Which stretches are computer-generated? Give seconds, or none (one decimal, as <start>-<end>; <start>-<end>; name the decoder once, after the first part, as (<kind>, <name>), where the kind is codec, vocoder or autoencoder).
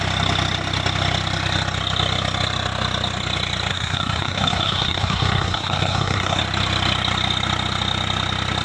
3.7-6.4 (codec, SNAC)